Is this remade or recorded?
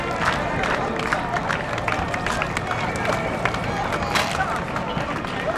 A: recorded